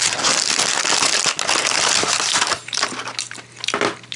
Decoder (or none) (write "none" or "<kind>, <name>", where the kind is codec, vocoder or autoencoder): none